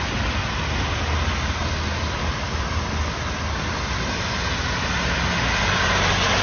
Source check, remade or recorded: recorded